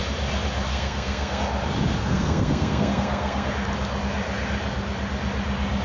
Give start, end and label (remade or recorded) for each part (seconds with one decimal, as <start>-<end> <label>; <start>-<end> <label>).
0.0-0.7 recorded; 0.7-1.4 remade; 1.4-2.0 recorded; 2.0-3.5 remade; 3.5-5.8 recorded